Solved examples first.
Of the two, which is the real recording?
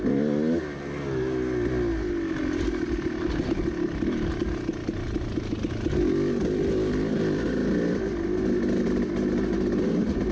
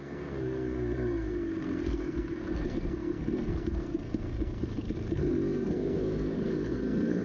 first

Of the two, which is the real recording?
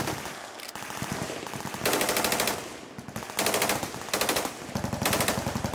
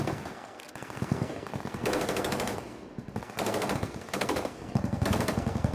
first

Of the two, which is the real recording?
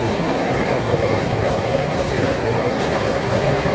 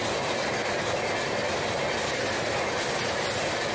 second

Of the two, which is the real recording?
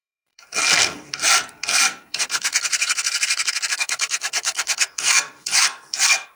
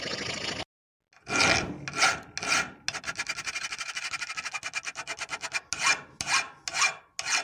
second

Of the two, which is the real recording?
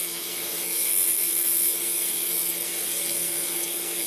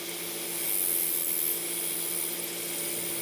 second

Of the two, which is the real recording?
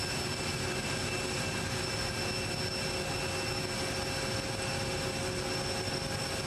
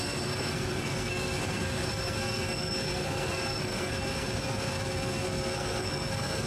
first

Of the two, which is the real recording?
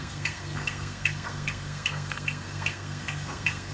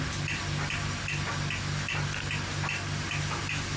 second